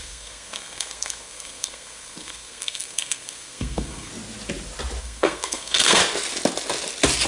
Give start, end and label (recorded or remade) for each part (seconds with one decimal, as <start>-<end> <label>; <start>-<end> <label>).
0.0-4.1 remade; 4.1-5.0 recorded; 5.0-6.0 remade; 6.0-7.3 recorded